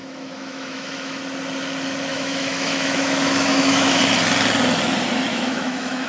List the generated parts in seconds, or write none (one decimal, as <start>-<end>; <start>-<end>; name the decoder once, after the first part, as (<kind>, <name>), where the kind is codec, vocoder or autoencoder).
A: 0.0-1.2 (autoencoder, DAC-VAE); 2.1-4.0; 5.3-6.1